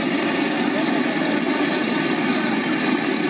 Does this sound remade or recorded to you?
recorded